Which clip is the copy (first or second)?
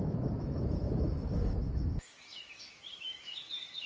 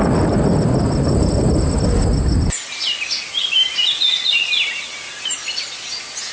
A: first